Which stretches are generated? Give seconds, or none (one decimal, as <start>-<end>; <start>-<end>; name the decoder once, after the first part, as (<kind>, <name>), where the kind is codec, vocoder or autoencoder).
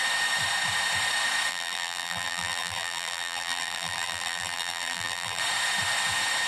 1.5-5.4 (vocoder, BigVGAN v2)